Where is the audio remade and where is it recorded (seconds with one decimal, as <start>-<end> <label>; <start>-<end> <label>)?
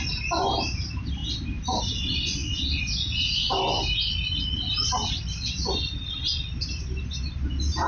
0.0-7.9 recorded